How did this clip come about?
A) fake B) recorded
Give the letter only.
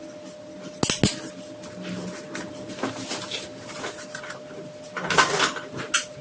B